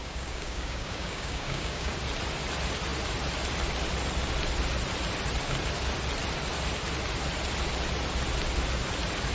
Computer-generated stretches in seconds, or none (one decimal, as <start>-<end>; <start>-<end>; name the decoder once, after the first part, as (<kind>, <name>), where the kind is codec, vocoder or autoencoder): 0.0-1.9 (codec, DAC)